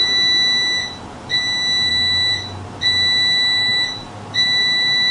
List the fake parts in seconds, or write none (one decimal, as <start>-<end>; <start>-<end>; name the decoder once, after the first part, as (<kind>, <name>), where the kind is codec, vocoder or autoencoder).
none